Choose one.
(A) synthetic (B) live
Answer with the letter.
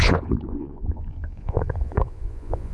A